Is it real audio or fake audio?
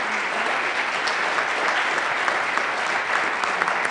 real